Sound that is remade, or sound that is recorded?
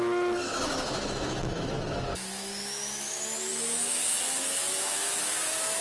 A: remade